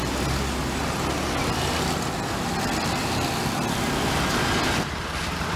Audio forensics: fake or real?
real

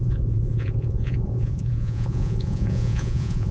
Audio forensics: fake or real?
fake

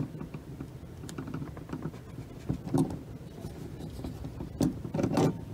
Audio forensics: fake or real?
real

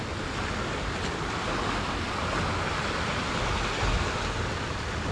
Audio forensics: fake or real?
real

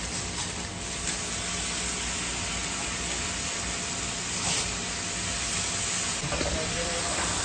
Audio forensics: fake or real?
real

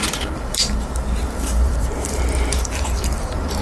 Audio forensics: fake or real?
fake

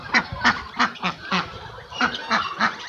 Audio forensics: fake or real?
fake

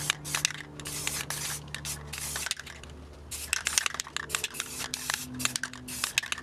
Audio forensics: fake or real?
real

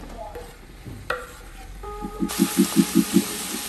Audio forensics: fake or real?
fake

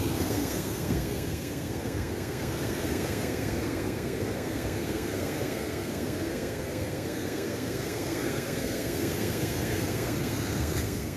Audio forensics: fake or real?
fake